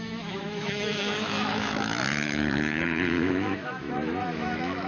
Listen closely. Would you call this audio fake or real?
fake